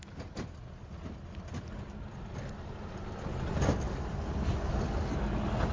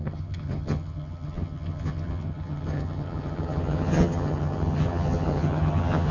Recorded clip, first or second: first